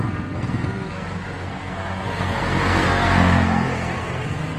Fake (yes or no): yes